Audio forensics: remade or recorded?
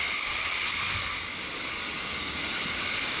remade